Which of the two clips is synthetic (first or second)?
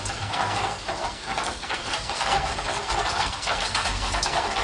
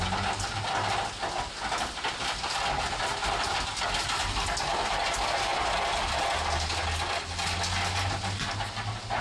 first